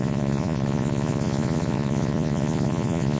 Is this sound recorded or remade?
remade